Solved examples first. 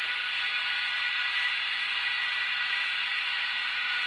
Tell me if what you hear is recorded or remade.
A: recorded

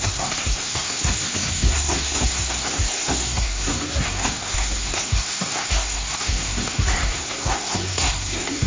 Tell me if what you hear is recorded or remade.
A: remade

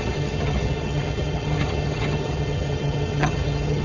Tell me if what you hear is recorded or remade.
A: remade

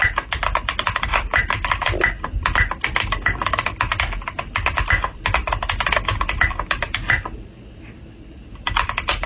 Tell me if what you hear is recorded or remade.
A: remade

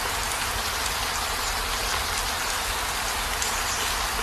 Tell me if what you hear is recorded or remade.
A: recorded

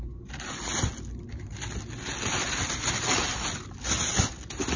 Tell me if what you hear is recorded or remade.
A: recorded